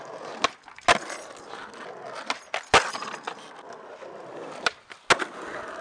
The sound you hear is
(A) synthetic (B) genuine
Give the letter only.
B